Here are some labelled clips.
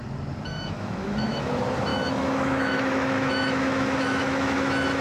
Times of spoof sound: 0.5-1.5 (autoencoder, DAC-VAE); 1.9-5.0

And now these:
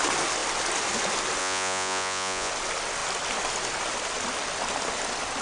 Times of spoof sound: 1.4-2.5 (vocoder, Vocos)

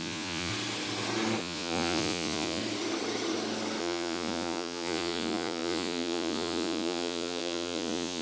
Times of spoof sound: 0.0-0.5 (vocoder, Vocos); 1.4-2.6; 3.8-8.2

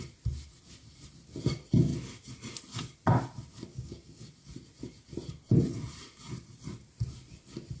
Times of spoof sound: 3.7-4.3 (codec, DAC)

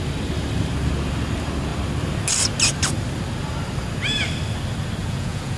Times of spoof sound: 5.0-5.6 (vocoder, Vocos)

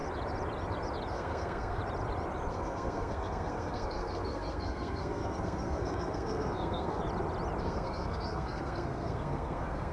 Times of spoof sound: 1.1-1.8 (codec, SNAC); 2.5-7.0; 7.6-9.9

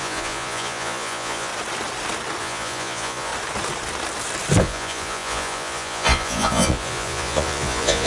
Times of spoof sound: 0.0-1.5 (vocoder, Vocos); 2.4-3.3; 4.6-8.1